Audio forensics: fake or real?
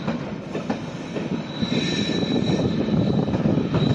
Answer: fake